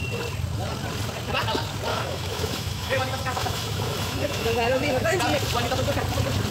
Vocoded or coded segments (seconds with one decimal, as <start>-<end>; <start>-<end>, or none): 1.9-5.2